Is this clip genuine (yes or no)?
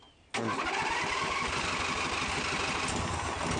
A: yes